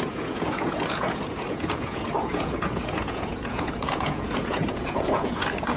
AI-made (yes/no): yes